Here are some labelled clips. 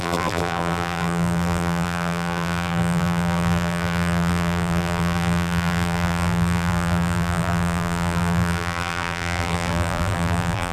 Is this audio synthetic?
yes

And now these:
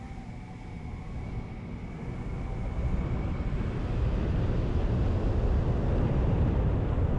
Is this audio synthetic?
no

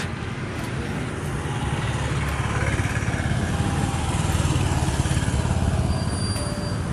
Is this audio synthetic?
no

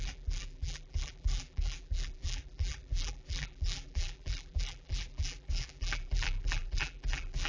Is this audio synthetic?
yes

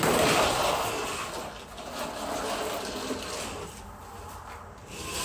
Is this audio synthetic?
no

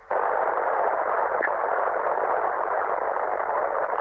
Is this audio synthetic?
no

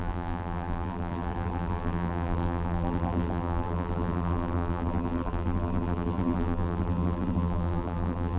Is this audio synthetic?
yes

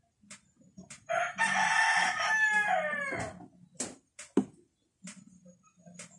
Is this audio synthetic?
no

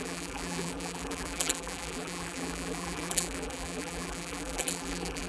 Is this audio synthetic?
yes